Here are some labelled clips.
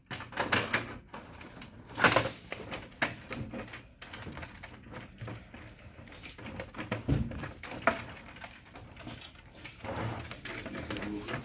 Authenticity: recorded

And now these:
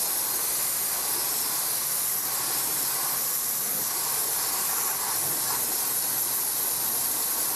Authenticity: recorded